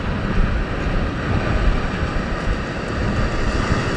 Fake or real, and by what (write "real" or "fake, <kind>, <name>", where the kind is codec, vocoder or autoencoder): real